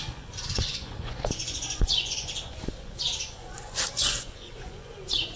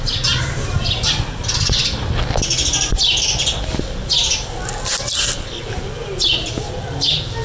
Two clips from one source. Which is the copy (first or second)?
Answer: first